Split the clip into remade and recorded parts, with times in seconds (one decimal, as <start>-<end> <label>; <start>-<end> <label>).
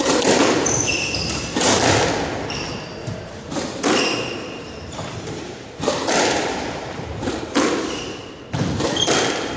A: 0.0-3.0 recorded; 3.0-4.0 remade; 4.0-4.4 recorded; 4.4-7.4 remade; 7.4-9.6 recorded